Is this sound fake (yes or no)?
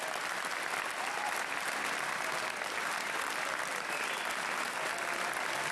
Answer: no